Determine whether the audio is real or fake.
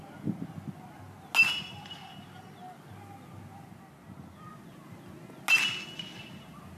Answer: real